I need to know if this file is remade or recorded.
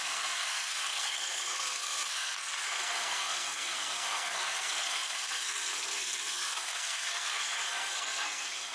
remade